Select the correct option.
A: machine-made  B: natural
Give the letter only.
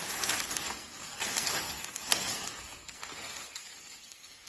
A